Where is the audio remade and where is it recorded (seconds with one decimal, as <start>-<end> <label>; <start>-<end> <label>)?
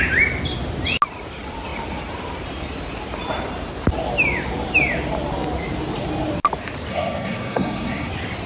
0.0-6.9 recorded; 6.9-8.1 remade; 8.1-8.5 recorded